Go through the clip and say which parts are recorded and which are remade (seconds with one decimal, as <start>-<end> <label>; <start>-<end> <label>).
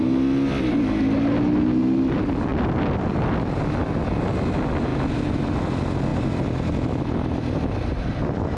0.0-8.6 recorded